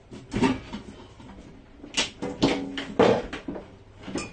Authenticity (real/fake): real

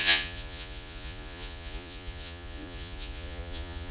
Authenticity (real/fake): fake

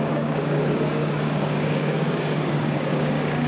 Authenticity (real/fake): fake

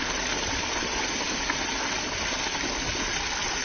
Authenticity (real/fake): real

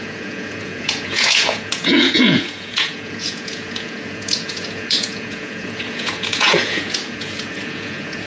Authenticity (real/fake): fake